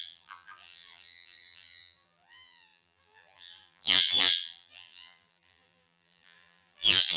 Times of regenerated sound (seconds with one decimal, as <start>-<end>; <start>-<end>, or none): 0.0-7.2